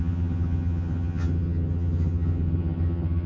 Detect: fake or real fake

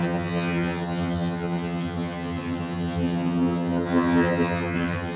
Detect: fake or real fake